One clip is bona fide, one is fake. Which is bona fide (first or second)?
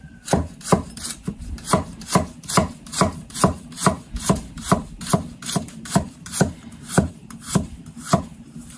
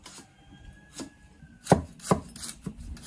second